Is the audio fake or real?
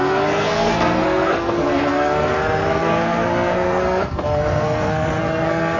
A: fake